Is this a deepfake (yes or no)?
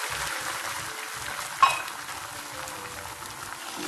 no